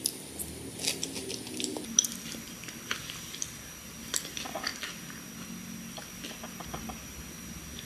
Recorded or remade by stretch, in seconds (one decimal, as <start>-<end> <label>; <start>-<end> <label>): 0.0-7.9 recorded